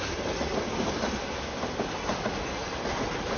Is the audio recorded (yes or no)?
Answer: yes